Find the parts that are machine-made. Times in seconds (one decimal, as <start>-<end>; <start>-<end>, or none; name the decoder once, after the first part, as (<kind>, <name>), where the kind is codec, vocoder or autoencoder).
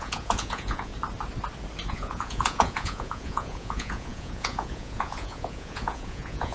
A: 0.0-0.9 (vocoder, Vocos); 1.9-6.5